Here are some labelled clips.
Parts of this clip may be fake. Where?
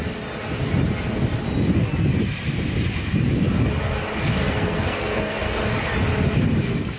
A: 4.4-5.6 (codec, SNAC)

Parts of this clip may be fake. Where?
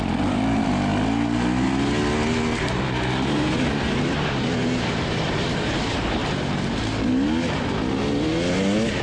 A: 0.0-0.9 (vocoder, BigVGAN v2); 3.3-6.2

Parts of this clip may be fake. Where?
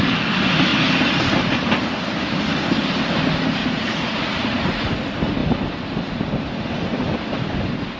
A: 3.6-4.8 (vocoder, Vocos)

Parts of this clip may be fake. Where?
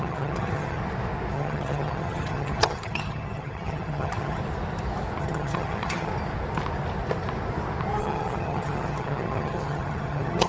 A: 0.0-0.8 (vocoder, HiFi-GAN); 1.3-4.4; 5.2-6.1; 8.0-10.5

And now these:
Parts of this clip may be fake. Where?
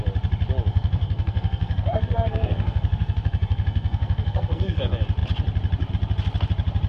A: 0.7-4.8 (codec, SNAC)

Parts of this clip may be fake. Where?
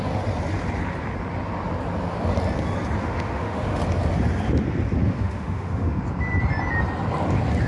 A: 3.0-3.8 (autoencoder, DAC-VAE); 5.0-6.0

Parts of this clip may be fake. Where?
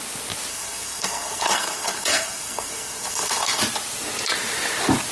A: 0.5-3.6 (codec, SNAC)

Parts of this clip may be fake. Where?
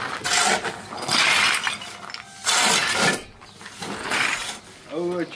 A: none